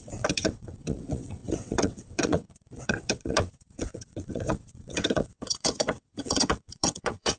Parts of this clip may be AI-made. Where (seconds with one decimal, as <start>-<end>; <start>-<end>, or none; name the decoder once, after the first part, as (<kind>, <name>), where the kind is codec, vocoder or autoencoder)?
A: 0.0-7.4 (vocoder, WaveNeXt)